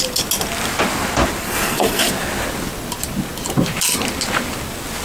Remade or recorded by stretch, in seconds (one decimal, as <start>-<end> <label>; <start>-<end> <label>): 0.0-1.4 recorded; 1.4-2.1 remade; 2.1-5.0 recorded

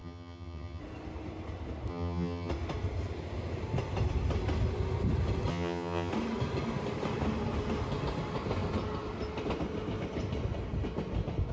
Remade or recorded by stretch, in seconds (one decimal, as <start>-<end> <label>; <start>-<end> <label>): 0.0-0.8 remade; 0.8-1.9 recorded; 1.9-2.5 remade; 2.5-5.5 recorded; 5.5-6.1 remade; 6.1-11.5 recorded

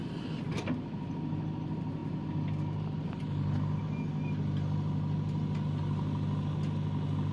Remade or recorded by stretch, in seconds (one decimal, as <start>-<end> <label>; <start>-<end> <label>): 0.0-7.3 recorded

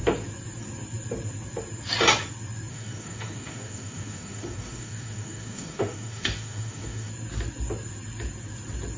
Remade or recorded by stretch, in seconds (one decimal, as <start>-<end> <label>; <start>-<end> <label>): 0.0-2.7 recorded; 2.7-7.1 remade; 7.1-9.0 recorded

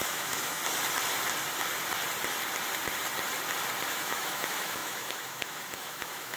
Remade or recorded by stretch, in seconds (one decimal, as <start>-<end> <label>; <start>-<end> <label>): 0.0-0.6 remade; 0.6-3.9 recorded; 3.9-6.4 remade

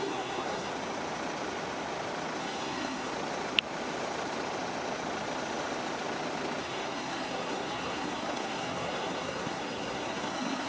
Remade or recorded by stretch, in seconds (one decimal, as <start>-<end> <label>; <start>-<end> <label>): 0.0-0.7 remade; 0.7-2.4 recorded; 2.4-3.1 remade; 3.1-6.6 recorded; 6.6-10.7 remade

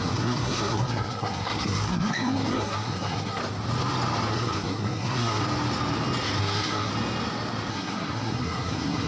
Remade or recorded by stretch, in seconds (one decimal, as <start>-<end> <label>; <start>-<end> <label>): 0.0-3.4 remade; 3.4-4.3 recorded; 4.3-5.4 remade; 5.4-6.4 recorded; 6.4-6.9 remade; 6.9-7.7 recorded; 7.7-9.1 remade